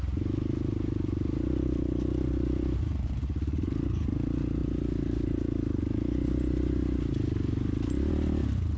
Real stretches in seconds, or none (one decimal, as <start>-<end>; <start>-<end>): 0.0-8.8